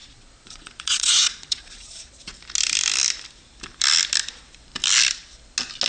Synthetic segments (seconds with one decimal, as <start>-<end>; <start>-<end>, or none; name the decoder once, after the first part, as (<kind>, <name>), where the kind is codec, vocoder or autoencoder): 0.0-2.3 (vocoder, Vocos)